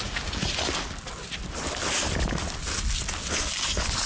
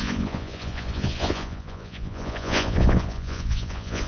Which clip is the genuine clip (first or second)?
first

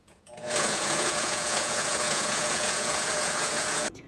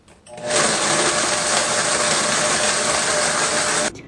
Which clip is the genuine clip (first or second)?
second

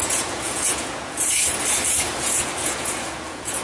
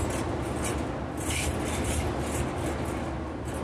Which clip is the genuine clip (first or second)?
second